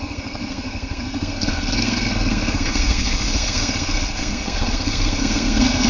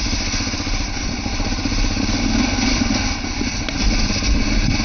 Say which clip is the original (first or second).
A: second